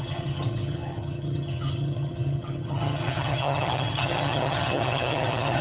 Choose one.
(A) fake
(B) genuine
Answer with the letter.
A